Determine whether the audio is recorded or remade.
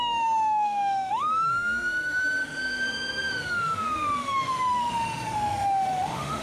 remade